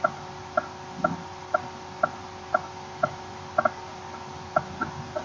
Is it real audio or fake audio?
real